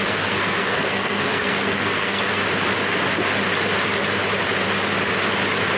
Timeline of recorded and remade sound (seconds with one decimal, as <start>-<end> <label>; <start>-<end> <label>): 0.0-2.4 remade; 2.4-5.8 recorded